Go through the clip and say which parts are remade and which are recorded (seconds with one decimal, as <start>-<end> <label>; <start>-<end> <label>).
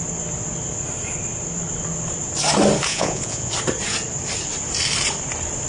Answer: 0.0-2.9 recorded; 2.9-3.5 remade; 3.5-5.7 recorded